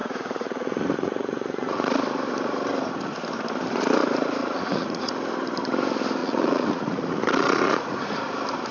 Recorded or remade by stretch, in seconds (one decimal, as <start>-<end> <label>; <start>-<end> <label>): 0.0-2.0 remade; 2.0-4.4 recorded; 4.4-5.1 remade; 5.1-6.2 recorded; 6.2-8.1 remade; 8.1-8.7 recorded